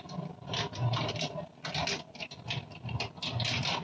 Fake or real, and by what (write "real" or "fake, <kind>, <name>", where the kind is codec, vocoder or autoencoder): real